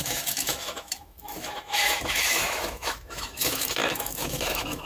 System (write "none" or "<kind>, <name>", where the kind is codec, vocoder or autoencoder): autoencoder, DAC-VAE